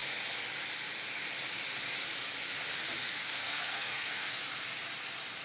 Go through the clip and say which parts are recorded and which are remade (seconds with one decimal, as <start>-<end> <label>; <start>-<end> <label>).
0.0-3.2 recorded; 3.2-4.4 remade; 4.4-5.4 recorded